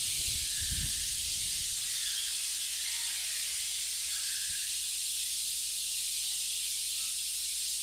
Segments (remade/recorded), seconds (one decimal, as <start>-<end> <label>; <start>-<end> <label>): 0.0-1.2 recorded; 1.2-2.0 remade; 2.0-3.2 recorded; 3.2-6.8 remade; 6.8-7.8 recorded